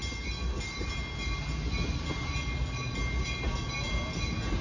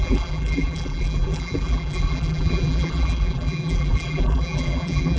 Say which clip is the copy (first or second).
second